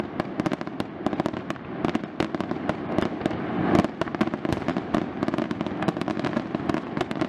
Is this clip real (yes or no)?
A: yes